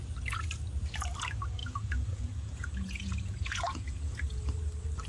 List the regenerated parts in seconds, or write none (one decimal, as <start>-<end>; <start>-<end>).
1.6-4.4